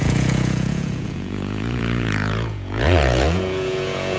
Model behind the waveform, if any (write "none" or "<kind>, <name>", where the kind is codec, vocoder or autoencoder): vocoder, Vocos